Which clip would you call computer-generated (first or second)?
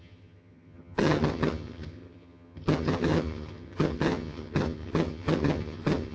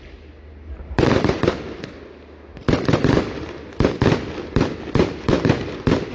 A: first